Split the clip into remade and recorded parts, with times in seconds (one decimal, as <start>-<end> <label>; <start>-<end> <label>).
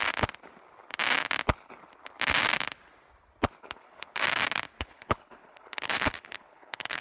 0.0-3.6 recorded; 3.6-4.2 remade; 4.2-4.8 recorded; 4.8-7.0 remade